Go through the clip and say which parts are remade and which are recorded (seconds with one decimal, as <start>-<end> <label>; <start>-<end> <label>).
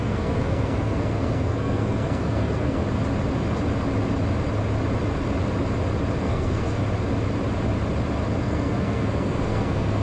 0.0-2.8 remade; 2.8-6.2 recorded; 6.2-6.8 remade; 6.8-8.4 recorded; 8.4-10.0 remade